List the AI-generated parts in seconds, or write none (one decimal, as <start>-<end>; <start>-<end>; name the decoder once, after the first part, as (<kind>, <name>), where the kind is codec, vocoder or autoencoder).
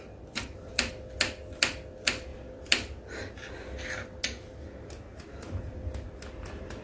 none